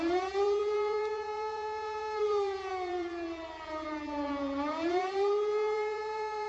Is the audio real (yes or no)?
no